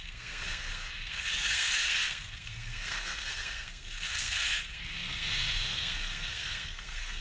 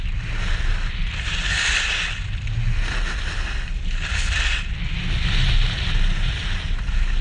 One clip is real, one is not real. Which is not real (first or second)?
first